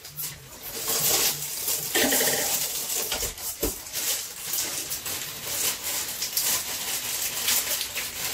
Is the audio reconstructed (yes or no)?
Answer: no